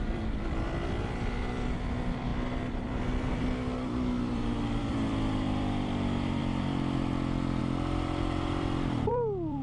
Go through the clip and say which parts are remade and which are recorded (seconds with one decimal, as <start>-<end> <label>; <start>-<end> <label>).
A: 0.0-6.4 remade; 6.4-7.6 recorded; 7.6-9.6 remade